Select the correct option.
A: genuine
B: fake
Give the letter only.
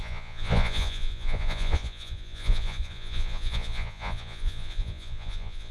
B